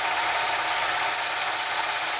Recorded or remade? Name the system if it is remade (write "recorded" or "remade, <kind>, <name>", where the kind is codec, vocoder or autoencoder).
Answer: recorded